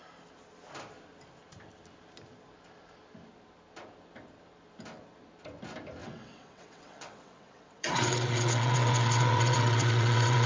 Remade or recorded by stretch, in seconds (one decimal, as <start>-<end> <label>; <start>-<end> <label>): 0.0-6.0 recorded; 6.0-10.5 remade